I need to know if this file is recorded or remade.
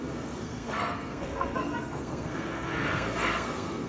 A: remade